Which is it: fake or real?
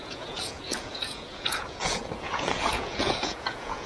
fake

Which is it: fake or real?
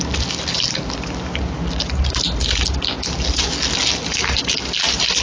real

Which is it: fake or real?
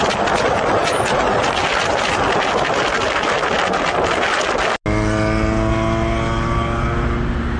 real